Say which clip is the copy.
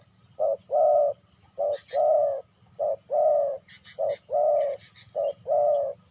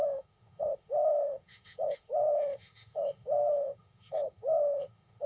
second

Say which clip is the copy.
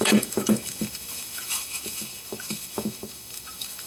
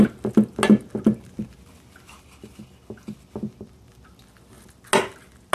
first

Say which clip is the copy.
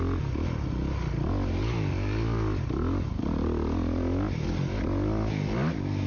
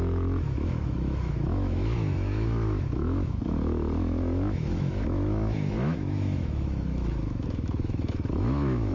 second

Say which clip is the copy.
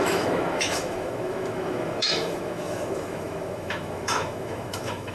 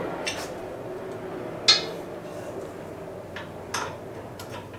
first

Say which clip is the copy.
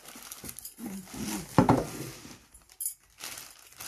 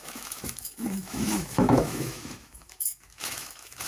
second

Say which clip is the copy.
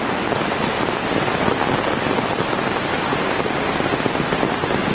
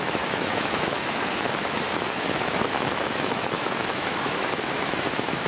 second